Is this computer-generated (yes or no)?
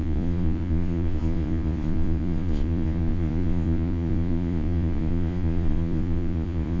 yes